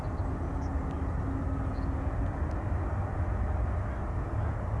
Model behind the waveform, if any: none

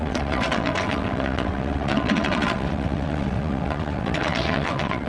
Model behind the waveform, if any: vocoder, WaveNeXt